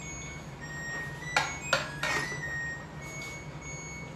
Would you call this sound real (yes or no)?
yes